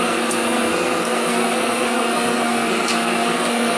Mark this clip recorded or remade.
remade